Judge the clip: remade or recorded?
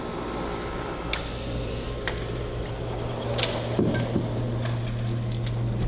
recorded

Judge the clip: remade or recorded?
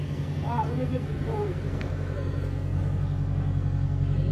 remade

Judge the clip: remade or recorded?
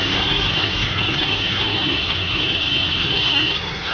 remade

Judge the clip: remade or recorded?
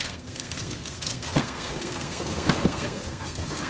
remade